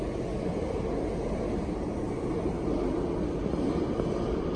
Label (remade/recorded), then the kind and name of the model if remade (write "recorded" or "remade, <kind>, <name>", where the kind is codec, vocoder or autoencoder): recorded